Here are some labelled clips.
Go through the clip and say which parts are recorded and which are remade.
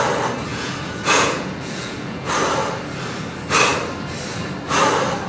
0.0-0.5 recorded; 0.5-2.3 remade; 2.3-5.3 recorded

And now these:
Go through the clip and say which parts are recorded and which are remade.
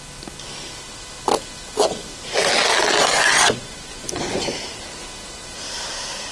0.0-3.0 recorded; 3.0-4.5 remade; 4.5-6.3 recorded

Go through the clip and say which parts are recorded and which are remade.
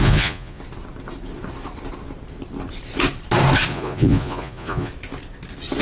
0.0-0.6 remade; 0.6-3.7 recorded; 3.7-4.9 remade; 4.9-5.8 recorded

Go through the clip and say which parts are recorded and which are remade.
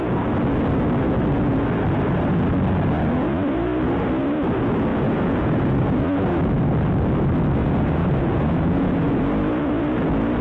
0.0-4.9 recorded; 4.9-6.0 remade; 6.0-7.6 recorded; 7.6-9.2 remade; 9.2-10.4 recorded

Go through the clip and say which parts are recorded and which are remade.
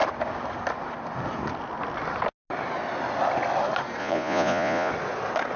0.0-4.0 recorded; 4.0-4.9 remade; 4.9-5.6 recorded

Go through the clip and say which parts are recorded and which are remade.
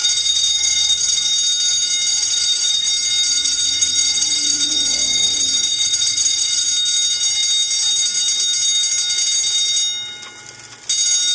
0.0-1.3 remade; 1.3-2.1 recorded; 2.1-2.9 remade; 2.9-3.3 recorded; 3.3-6.7 remade; 6.7-11.3 recorded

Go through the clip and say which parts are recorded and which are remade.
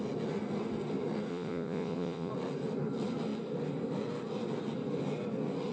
0.0-1.3 recorded; 1.3-2.3 remade; 2.3-5.7 recorded